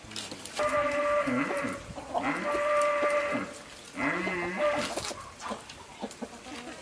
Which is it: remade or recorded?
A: recorded